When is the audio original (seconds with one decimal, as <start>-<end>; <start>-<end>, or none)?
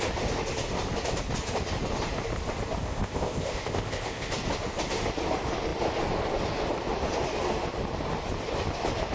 0.0-2.8; 4.3-9.1